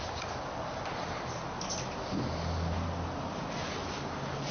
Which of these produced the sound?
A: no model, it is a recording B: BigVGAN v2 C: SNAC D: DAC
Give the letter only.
A